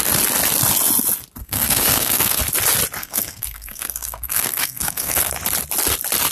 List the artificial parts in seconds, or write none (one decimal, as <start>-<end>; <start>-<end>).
1.4-2.4; 3.0-5.3